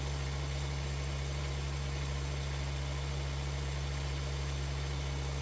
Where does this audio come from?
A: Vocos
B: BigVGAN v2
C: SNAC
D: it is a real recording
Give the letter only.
D